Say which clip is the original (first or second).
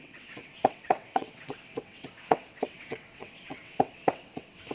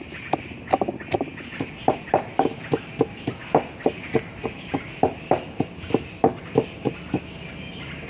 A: second